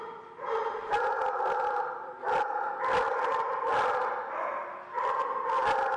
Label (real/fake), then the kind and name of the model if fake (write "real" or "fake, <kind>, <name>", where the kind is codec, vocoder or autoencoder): fake, vocoder, BigVGAN v2